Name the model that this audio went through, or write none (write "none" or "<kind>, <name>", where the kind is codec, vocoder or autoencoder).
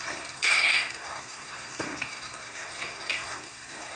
codec, SNAC